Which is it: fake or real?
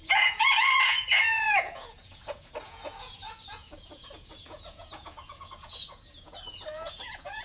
fake